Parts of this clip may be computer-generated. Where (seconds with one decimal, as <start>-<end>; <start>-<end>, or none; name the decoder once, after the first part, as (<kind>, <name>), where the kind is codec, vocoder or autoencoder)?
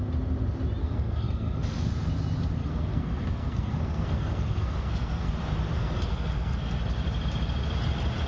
0.8-1.9 (codec, SNAC); 2.6-5.3; 5.8-6.8